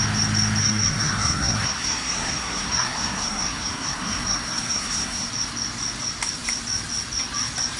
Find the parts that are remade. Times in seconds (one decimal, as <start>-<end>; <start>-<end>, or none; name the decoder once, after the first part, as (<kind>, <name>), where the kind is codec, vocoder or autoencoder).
0.6-5.3 (codec, SNAC)